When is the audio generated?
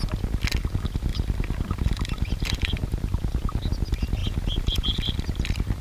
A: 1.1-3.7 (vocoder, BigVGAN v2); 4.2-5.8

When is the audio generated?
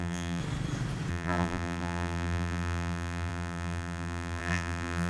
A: 0.0-0.4 (vocoder, BigVGAN v2); 1.1-5.1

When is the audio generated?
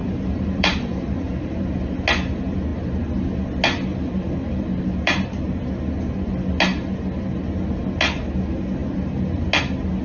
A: 0.0-1.6 (vocoder, BigVGAN v2)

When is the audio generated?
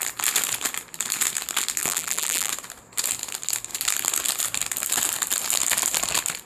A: 1.8-2.5 (vocoder, BigVGAN v2)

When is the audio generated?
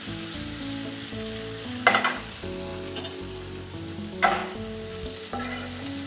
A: 0.0-2.7 (vocoder, BigVGAN v2); 3.2-6.1